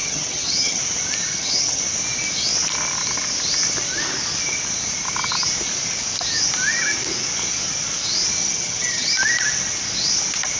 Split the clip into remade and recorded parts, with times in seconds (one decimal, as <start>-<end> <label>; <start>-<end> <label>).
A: 0.0-0.8 remade; 0.8-1.3 recorded; 1.3-1.8 remade; 1.8-8.4 recorded; 8.4-9.1 remade; 9.1-10.6 recorded